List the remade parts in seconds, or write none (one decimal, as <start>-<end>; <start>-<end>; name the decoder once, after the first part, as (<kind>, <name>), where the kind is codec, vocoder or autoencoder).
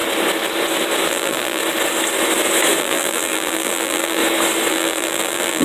1.1-1.6 (vocoder, BigVGAN v2); 2.8-4.2; 4.7-5.6